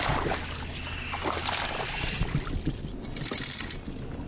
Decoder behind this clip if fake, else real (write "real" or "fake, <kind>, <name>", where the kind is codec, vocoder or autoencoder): real